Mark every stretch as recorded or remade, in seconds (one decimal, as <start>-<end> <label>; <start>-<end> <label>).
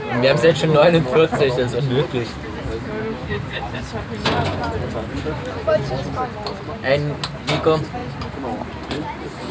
0.0-9.5 recorded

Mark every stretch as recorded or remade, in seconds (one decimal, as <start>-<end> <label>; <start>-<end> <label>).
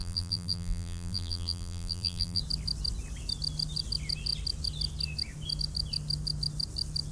0.0-2.4 remade; 2.4-7.1 recorded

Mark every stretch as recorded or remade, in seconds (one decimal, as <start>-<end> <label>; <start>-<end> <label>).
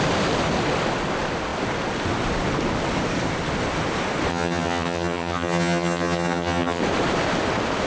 0.0-4.3 recorded; 4.3-6.8 remade; 6.8-7.9 recorded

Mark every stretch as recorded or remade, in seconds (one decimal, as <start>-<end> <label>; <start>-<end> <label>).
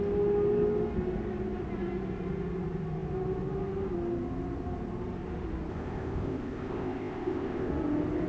0.0-5.7 recorded; 5.7-7.7 remade; 7.7-8.3 recorded